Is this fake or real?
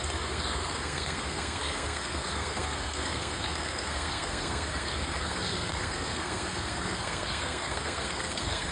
fake